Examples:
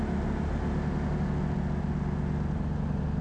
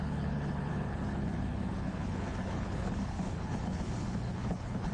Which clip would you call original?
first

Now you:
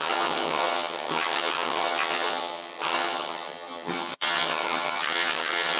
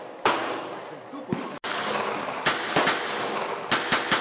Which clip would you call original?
second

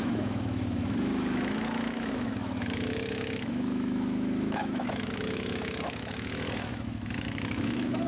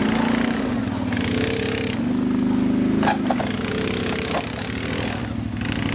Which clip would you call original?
second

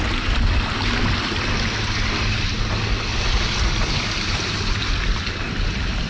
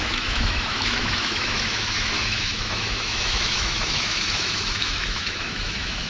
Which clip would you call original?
first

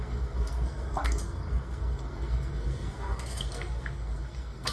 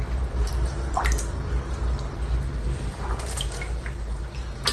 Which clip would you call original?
second